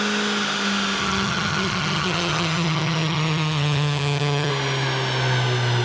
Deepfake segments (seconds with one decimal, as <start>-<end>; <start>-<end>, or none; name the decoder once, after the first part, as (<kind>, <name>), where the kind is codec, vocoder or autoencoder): 1.0-4.5 (vocoder, HiFi-GAN)

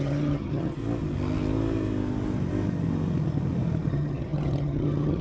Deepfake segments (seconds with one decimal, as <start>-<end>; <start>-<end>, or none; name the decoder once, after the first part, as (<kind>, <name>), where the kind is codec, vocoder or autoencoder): 0.0-0.8 (vocoder, HiFi-GAN); 3.9-5.2

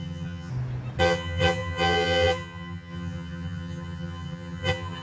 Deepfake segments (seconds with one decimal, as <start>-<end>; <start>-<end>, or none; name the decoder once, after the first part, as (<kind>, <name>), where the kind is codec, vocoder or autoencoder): 0.0-0.5 (vocoder, HiFi-GAN); 1.0-5.0

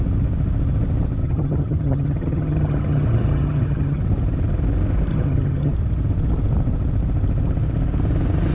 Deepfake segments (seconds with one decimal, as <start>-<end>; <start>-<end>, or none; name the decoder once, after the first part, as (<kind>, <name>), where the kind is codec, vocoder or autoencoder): 1.2-4.0 (vocoder, HiFi-GAN); 5.1-5.7

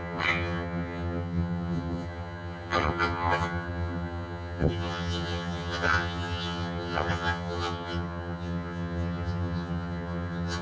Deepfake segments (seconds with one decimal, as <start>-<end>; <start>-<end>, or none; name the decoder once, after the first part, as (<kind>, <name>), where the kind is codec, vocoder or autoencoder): 0.0-10.6 (vocoder, HiFi-GAN)

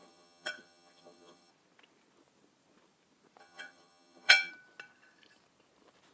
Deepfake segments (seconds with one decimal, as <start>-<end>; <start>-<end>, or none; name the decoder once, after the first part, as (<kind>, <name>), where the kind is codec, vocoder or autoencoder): 0.0-1.5 (vocoder, HiFi-GAN); 3.4-4.5

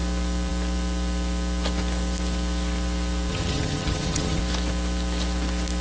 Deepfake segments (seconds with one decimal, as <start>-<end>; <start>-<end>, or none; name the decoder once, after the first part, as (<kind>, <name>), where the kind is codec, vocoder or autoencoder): 3.3-4.4 (vocoder, HiFi-GAN)